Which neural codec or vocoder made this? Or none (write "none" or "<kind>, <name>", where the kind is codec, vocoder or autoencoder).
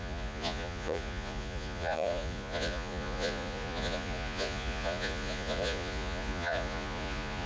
vocoder, Vocos